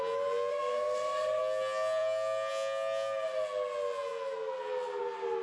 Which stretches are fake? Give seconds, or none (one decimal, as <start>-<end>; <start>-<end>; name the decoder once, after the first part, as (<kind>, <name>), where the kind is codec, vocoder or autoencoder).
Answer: 0.5-1.4 (codec, SNAC)